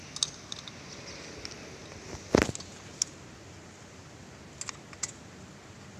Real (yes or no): yes